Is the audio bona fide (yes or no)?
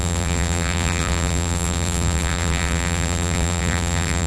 no